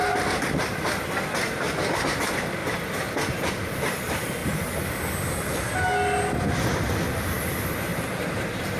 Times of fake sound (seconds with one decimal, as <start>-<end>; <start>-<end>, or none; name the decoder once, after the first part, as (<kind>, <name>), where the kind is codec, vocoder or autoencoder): 2.6-3.5 (vocoder, BigVGAN v2); 7.9-8.8